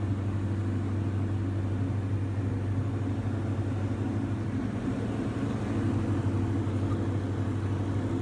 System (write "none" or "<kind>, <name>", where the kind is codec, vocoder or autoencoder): none